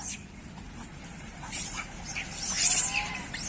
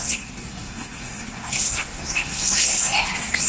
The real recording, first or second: first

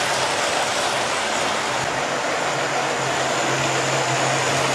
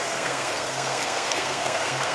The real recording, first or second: first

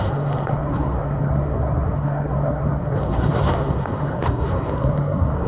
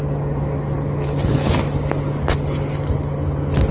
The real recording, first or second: second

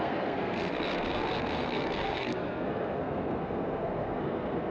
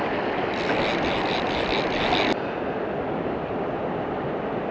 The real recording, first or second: second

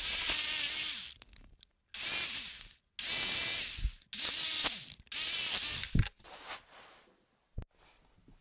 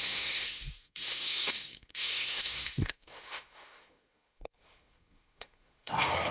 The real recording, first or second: first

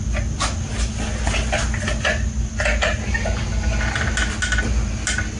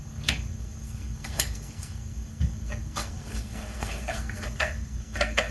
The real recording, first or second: first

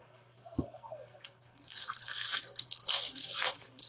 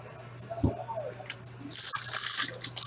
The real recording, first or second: second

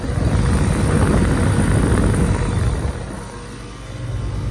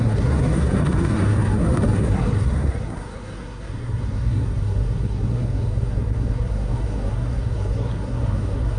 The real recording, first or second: first